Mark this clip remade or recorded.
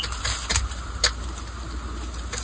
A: recorded